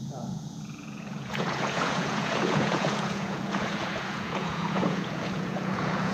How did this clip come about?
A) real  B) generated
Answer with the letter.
B